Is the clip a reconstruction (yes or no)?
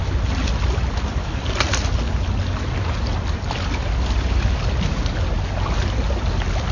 no